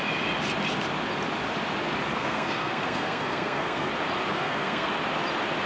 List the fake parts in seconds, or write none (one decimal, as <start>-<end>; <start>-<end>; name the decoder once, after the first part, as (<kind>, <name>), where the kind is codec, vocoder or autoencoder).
2.1-3.9 (codec, SNAC); 4.3-4.9